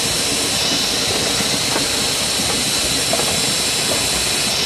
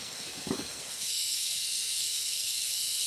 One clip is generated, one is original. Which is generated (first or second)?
second